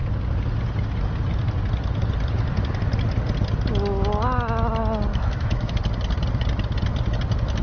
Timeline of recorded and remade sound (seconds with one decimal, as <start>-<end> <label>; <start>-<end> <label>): 0.0-5.1 recorded; 5.1-5.8 remade; 5.8-7.6 recorded